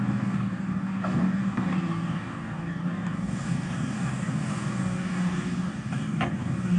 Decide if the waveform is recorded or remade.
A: remade